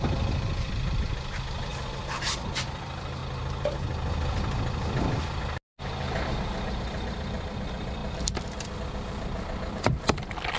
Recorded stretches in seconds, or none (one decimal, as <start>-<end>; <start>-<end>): 1.7-2.3; 3.2-5.8; 8.0-8.8